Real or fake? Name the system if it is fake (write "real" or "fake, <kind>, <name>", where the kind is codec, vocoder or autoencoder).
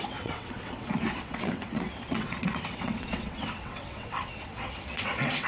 fake, vocoder, WaveNeXt